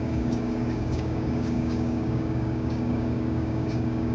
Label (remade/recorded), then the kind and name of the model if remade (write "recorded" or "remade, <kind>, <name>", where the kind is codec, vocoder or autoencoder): remade, codec, DAC